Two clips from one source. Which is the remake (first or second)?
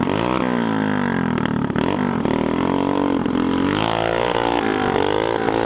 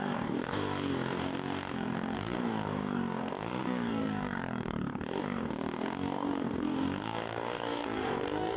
second